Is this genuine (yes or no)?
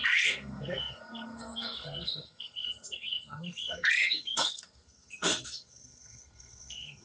no